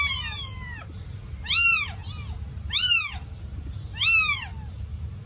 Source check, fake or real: real